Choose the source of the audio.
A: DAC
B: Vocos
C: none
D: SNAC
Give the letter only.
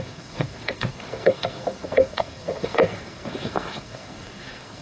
D